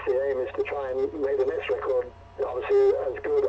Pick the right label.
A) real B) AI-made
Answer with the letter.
A